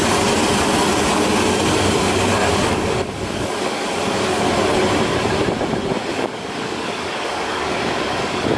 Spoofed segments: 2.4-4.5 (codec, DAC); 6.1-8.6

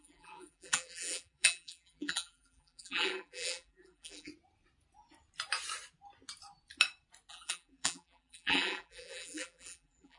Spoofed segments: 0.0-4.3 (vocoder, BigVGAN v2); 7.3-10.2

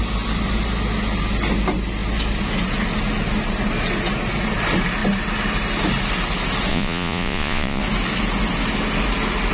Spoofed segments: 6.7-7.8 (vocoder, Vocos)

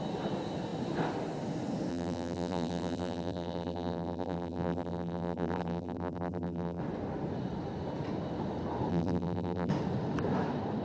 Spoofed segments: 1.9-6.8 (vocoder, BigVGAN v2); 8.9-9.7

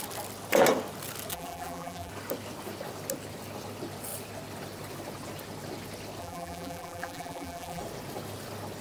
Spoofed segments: 1.3-2.1 (vocoder, BigVGAN v2); 6.2-7.8

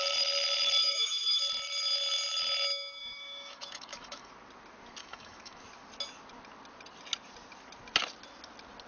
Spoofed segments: 0.8-1.4 (autoencoder, DAC-VAE); 3.0-4.3; 5.0-5.6

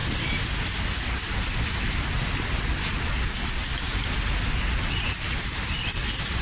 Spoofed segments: none